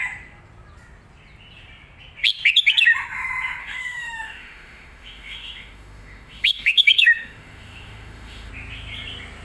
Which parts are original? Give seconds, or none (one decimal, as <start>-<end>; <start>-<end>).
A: 0.0-3.6; 8.5-9.4